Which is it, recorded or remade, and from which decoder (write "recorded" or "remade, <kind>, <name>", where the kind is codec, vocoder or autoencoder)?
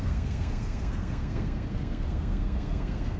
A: remade, codec, SNAC